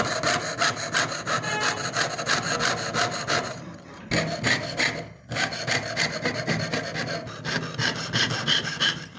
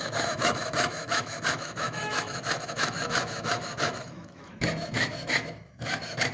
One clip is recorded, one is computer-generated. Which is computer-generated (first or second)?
second